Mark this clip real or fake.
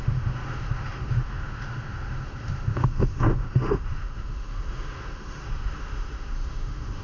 fake